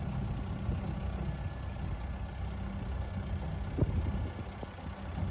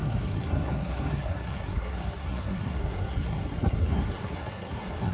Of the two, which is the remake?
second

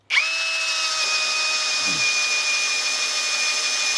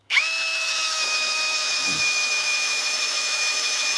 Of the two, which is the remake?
second